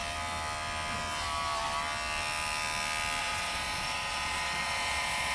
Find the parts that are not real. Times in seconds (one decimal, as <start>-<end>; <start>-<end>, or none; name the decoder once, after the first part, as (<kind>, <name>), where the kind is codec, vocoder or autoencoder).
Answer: 3.2-5.3 (vocoder, Vocos)